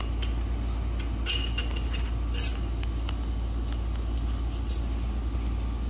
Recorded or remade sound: recorded